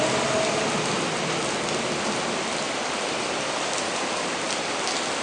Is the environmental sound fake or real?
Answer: real